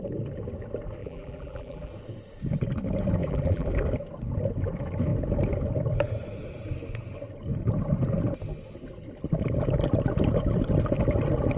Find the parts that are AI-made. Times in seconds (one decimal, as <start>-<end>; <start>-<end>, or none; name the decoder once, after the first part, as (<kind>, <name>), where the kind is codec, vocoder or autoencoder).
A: 1.0-1.9 (vocoder, BigVGAN v2); 3.2-3.7